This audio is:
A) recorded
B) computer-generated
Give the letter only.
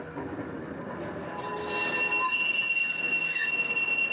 A